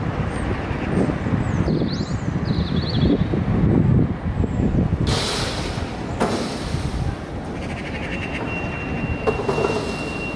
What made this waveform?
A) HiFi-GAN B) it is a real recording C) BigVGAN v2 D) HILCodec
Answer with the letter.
B